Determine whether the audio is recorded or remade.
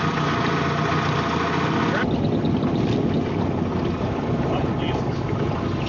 recorded